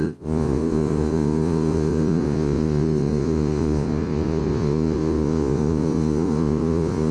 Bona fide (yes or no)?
no